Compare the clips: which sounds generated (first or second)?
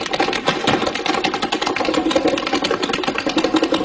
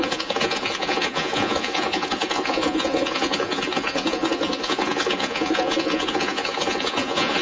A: second